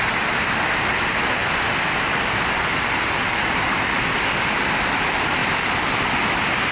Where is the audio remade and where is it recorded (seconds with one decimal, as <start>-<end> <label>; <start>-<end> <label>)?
0.0-6.7 recorded